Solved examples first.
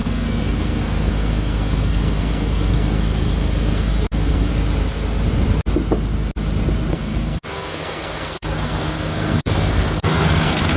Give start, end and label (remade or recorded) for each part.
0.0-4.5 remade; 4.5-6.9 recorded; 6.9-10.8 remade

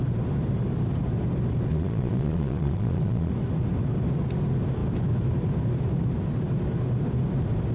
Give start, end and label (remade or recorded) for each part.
0.0-1.7 recorded; 1.7-3.3 remade; 3.3-7.7 recorded

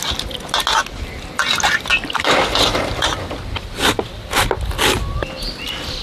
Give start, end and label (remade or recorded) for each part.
0.0-1.9 recorded; 1.9-4.4 remade; 4.4-6.0 recorded

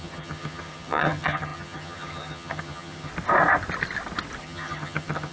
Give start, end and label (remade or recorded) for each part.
0.0-3.1 remade; 3.1-4.4 recorded; 4.4-5.3 remade

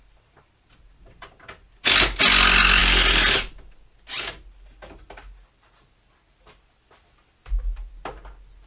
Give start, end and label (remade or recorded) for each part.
0.0-8.7 recorded

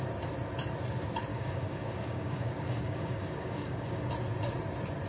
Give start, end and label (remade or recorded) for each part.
0.0-1.3 recorded; 1.3-4.1 remade; 4.1-5.1 recorded